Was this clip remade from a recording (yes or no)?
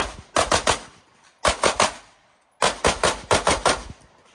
no